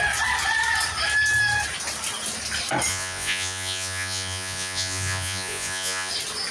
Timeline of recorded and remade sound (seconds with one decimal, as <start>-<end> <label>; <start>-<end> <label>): 0.0-2.9 recorded; 2.9-6.1 remade; 6.1-6.5 recorded